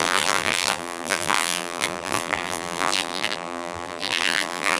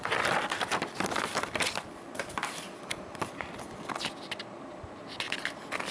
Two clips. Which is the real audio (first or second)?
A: second